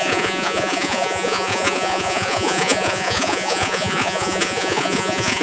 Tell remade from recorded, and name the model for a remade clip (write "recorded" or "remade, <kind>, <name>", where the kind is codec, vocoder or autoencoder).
remade, vocoder, Vocos